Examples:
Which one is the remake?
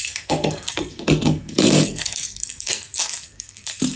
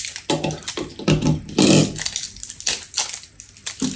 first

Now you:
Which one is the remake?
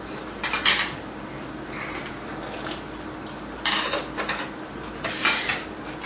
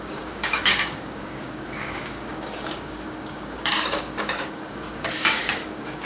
second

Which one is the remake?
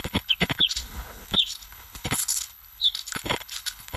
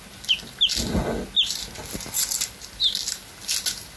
first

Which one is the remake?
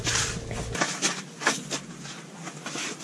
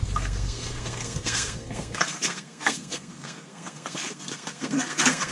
second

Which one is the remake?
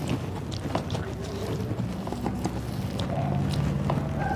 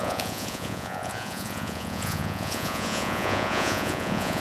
second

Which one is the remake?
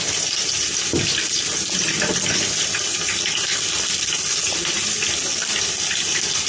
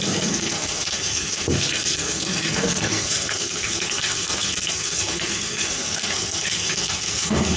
second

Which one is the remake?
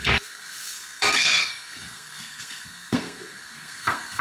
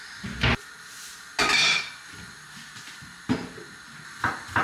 first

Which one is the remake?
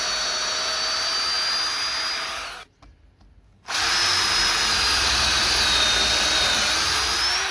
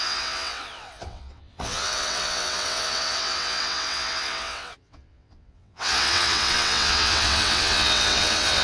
second